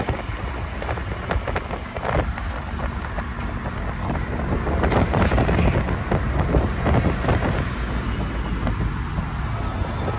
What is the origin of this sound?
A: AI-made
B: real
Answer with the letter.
B